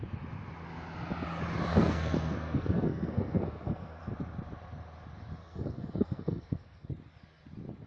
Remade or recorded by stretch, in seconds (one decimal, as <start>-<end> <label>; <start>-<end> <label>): 0.0-1.7 recorded; 1.7-4.0 remade; 4.0-5.4 recorded; 5.4-6.9 remade; 6.9-7.9 recorded

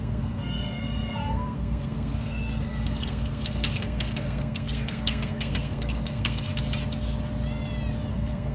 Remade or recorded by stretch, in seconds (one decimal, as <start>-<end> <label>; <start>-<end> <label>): 0.0-6.5 remade; 6.5-8.1 recorded; 8.1-8.5 remade

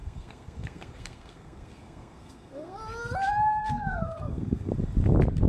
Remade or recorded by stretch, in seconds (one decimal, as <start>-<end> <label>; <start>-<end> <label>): 0.0-2.8 remade; 2.8-3.6 recorded; 3.6-4.7 remade; 4.7-5.5 recorded

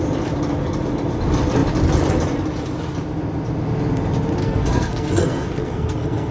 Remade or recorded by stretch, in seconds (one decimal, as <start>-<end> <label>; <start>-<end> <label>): 0.0-4.4 recorded; 4.4-6.3 remade

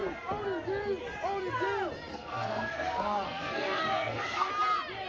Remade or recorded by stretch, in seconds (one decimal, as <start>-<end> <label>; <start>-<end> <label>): 0.0-2.1 recorded; 2.1-4.5 remade; 4.5-5.1 recorded

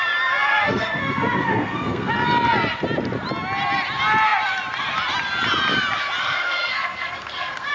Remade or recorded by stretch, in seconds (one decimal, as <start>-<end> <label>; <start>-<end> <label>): 0.0-0.5 recorded; 0.5-2.1 remade; 2.1-6.2 recorded; 6.2-7.7 remade

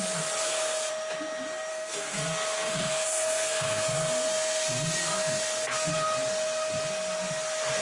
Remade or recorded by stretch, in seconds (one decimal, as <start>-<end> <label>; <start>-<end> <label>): 0.0-0.4 recorded; 0.4-0.9 remade; 0.9-1.7 recorded; 1.7-5.9 remade; 5.9-7.8 recorded

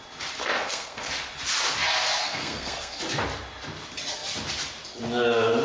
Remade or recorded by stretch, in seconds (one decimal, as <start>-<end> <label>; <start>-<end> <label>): 0.0-0.4 recorded; 0.4-1.1 remade; 1.1-2.2 recorded; 2.2-3.0 remade; 3.0-5.6 recorded